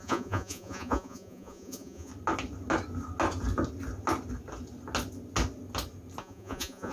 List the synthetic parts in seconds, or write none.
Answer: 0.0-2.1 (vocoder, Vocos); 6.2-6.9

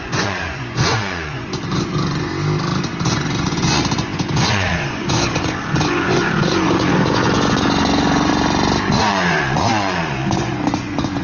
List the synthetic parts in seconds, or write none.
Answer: 0.0-2.3 (vocoder, Vocos); 3.1-8.3; 9.0-11.2

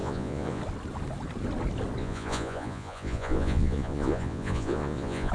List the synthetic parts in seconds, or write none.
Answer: 0.0-0.6 (vocoder, Vocos); 2.0-5.3